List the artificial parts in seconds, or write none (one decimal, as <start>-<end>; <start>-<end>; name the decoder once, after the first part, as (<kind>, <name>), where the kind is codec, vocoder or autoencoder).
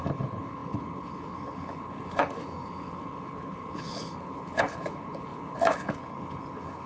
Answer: 0.0-6.9 (codec, HILCodec)